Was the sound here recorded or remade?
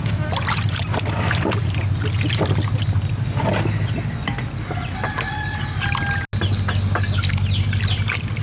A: recorded